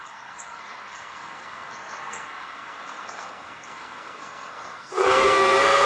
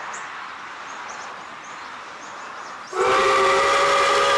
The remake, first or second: first